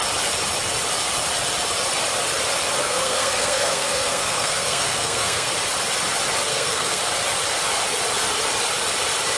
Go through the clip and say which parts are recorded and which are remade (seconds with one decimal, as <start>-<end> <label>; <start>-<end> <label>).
0.0-2.8 recorded; 2.8-5.5 remade; 5.5-6.5 recorded; 6.5-7.0 remade; 7.0-9.4 recorded